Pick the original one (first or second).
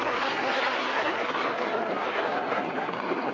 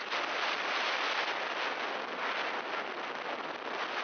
second